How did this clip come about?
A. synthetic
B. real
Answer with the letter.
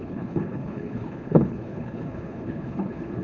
A